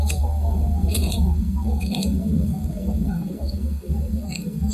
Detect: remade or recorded remade